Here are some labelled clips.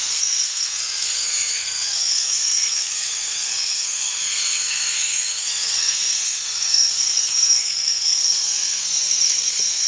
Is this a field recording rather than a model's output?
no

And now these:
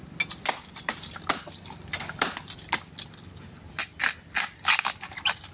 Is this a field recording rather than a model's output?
yes